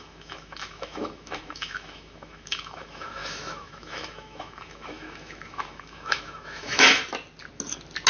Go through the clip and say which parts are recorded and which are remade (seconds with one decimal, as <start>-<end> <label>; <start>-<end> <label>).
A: 0.0-7.0 remade; 7.0-8.1 recorded